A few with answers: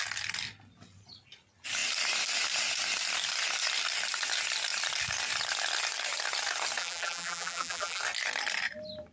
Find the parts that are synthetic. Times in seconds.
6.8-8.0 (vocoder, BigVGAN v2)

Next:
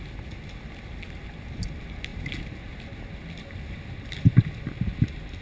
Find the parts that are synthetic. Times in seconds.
none

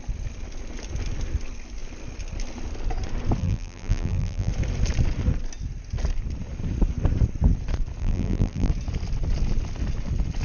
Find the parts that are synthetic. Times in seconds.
3.4-4.5 (vocoder, BigVGAN v2); 8.0-8.7

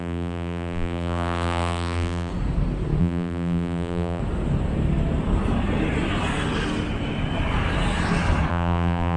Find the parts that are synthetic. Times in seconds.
0.0-2.3 (vocoder, BigVGAN v2); 3.0-4.2; 8.5-9.2

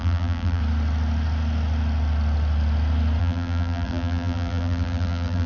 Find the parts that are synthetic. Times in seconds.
0.0-0.6 (vocoder, BigVGAN v2); 3.2-5.5

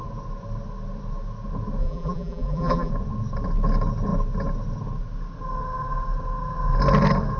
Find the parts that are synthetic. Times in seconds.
1.8-2.9 (vocoder, BigVGAN v2)

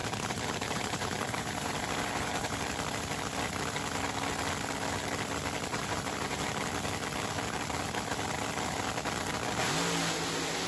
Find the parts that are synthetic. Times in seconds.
0.0-2.6 (vocoder, BigVGAN v2); 5.7-6.5

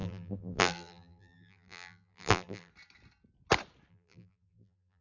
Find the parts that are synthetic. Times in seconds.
0.0-2.7 (vocoder, BigVGAN v2); 3.9-5.0